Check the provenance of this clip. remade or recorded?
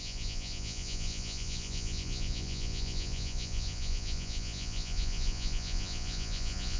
remade